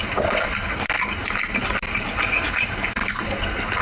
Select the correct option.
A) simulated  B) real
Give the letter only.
B